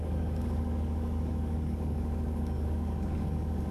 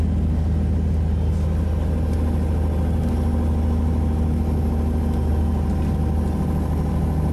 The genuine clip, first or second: second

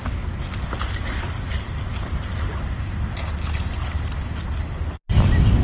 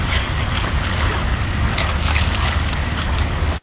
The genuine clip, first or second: first